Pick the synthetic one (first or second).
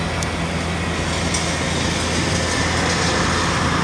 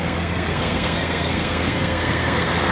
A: second